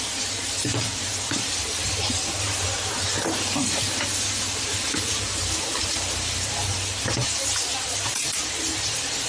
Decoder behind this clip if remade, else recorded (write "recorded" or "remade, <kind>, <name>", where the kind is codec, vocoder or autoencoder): remade, vocoder, BigVGAN v2